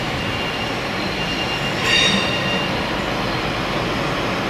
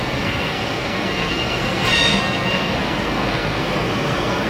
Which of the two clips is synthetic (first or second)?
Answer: second